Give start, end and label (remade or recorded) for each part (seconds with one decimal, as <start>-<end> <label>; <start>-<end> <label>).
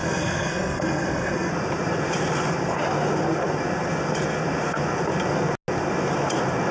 0.0-1.5 remade; 1.5-6.7 recorded